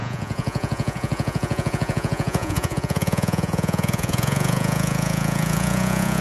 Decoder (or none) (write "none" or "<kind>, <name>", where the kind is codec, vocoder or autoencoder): vocoder, Vocos